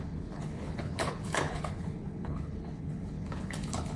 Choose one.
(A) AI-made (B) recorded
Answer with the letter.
A